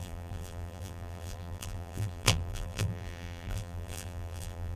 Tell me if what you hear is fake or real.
fake